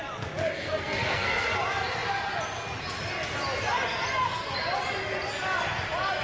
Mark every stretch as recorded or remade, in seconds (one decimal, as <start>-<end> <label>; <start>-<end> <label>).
0.0-0.4 recorded; 0.4-1.5 remade; 1.5-6.2 recorded